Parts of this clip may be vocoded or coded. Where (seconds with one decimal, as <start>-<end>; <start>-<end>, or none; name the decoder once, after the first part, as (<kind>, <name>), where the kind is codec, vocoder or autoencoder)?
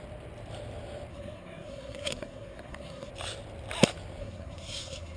1.1-3.1 (codec, SNAC); 4.2-5.2